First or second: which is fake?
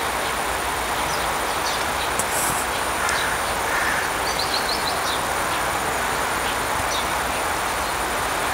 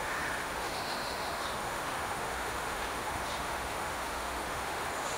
second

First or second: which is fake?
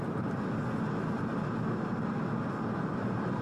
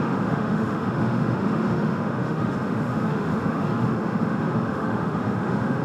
second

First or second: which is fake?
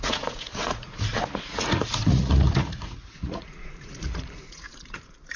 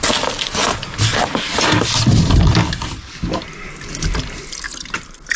first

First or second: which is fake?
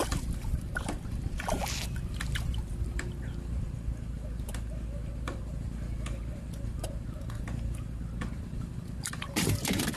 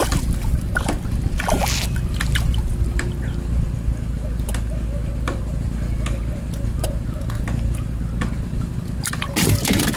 first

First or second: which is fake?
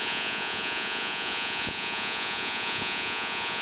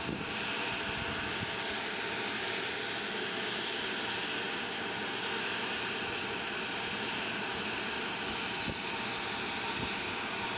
first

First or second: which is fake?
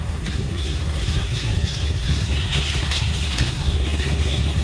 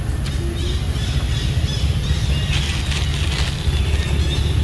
first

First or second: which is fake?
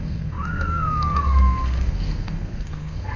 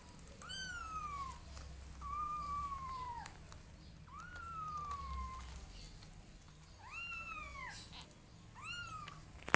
first